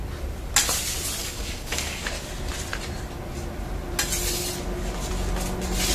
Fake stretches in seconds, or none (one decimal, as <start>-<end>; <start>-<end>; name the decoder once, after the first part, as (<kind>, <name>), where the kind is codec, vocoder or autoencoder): 1.2-2.0 (codec, DAC)